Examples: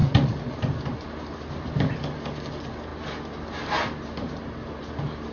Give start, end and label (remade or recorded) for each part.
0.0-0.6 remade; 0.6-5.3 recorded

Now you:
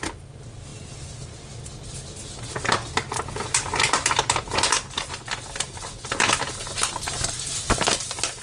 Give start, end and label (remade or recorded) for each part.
0.0-8.4 recorded